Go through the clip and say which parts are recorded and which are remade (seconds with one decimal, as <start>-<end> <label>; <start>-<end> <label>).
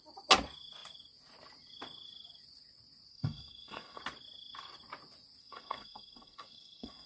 0.0-3.1 recorded; 3.1-4.0 remade; 4.0-5.4 recorded; 5.4-7.1 remade